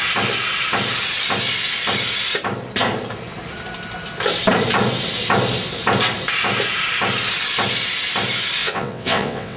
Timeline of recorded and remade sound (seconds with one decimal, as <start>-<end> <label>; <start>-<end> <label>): 0.0-8.6 recorded; 8.6-9.6 remade